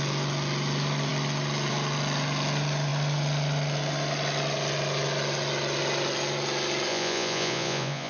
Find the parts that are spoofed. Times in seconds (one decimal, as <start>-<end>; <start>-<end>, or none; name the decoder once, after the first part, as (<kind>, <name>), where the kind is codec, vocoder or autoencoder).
6.9-8.1 (vocoder, Vocos)